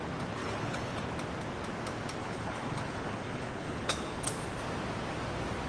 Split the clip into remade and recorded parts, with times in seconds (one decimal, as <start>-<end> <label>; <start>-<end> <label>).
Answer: 0.0-0.4 recorded; 0.4-1.0 remade; 1.0-2.2 recorded; 2.2-4.2 remade; 4.2-5.7 recorded